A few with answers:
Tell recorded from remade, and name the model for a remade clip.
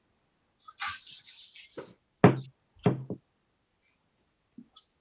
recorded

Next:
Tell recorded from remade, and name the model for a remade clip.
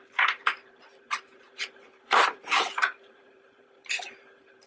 remade, vocoder, BigVGAN v2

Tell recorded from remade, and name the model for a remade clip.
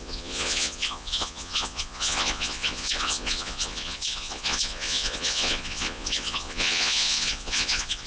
remade, vocoder, Vocos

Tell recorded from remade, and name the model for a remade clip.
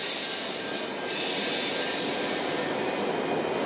recorded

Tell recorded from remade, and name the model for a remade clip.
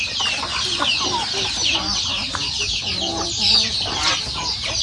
remade, vocoder, BigVGAN v2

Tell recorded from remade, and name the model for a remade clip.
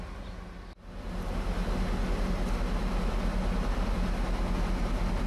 recorded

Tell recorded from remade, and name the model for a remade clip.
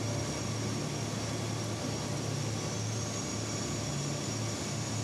recorded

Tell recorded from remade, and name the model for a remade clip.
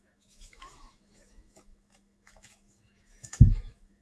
remade, autoencoder, DAC-VAE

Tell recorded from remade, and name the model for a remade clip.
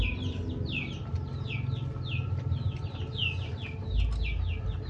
recorded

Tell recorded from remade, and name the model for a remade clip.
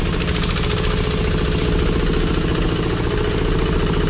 recorded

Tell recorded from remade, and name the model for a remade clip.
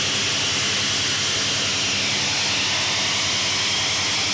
recorded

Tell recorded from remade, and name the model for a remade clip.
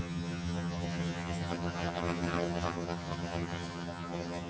remade, vocoder, HiFi-GAN